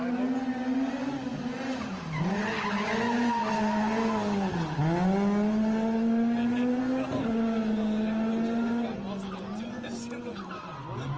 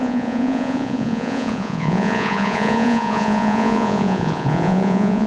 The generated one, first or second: second